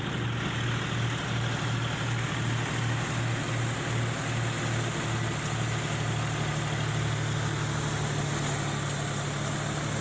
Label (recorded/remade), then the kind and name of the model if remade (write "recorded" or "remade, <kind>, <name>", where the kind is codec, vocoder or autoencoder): recorded